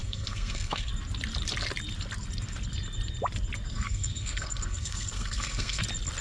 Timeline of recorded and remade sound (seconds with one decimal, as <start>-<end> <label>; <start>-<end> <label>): 0.0-0.9 remade; 0.9-3.7 recorded; 3.7-5.8 remade; 5.8-6.2 recorded